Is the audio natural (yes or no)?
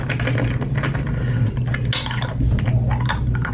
yes